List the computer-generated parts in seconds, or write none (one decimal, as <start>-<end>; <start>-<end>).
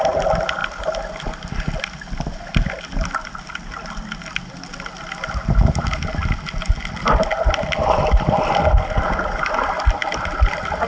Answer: none